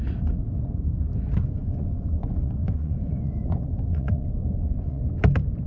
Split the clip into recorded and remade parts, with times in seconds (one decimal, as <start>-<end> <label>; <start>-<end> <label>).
0.0-1.6 recorded; 1.6-5.0 remade; 5.0-5.7 recorded